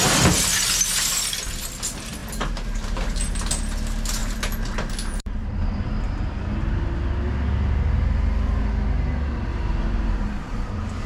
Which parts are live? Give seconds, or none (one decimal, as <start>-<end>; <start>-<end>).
0.0-2.2; 3.2-4.2; 5.4-9.5